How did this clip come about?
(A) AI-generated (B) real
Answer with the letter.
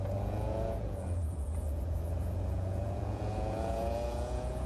A